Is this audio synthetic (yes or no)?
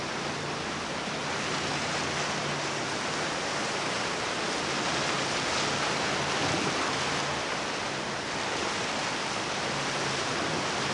no